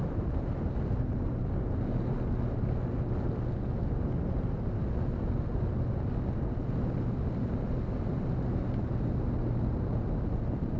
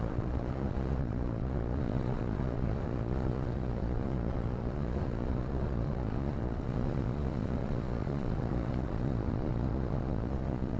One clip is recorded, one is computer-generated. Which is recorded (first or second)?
first